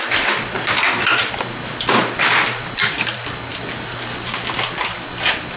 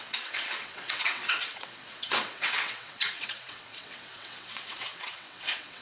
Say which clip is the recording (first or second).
first